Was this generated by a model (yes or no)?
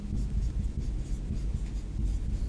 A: no